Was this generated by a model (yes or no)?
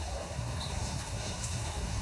yes